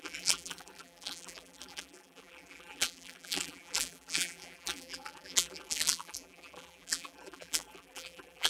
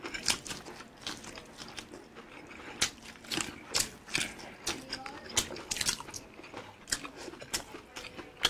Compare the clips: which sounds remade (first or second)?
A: first